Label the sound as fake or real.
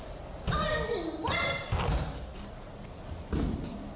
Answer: real